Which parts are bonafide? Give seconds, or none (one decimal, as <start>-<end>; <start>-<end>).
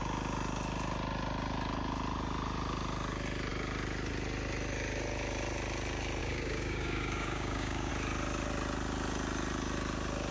0.0-6.2; 7.9-10.3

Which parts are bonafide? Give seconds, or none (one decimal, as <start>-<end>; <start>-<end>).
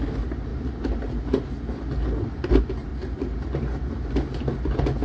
0.0-2.9; 4.1-5.0